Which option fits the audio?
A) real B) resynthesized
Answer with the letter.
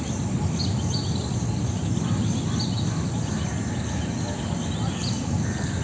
A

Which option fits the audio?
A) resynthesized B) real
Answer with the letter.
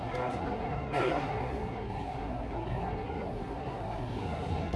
A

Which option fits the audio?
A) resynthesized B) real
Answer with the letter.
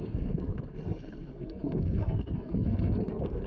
A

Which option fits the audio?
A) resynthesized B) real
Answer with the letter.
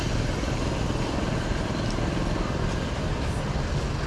B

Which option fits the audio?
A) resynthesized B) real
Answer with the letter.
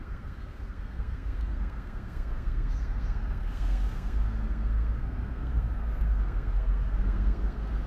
A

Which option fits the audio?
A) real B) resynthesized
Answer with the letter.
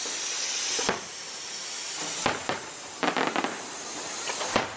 A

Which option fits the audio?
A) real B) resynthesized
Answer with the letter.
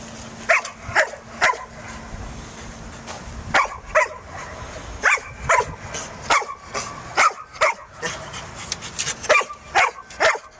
A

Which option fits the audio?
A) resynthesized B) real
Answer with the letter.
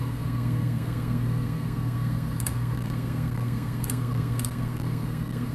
A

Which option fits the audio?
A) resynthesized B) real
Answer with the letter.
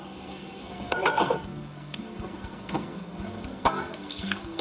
A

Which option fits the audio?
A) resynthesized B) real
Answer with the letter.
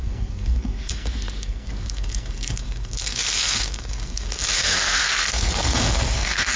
A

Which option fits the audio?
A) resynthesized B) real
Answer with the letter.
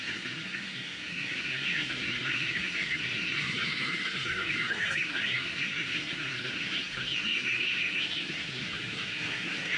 A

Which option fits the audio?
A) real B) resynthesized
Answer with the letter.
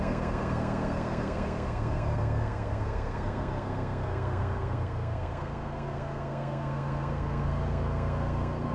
B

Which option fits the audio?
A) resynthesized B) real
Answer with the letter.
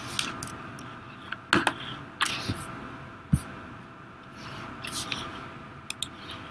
B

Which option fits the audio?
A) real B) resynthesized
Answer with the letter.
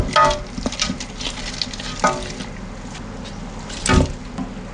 A